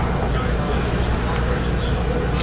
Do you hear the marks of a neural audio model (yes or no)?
no